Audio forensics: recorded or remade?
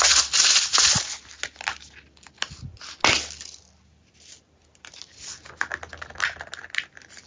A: recorded